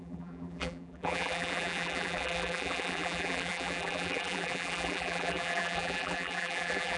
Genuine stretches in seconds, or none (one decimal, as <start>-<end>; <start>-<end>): none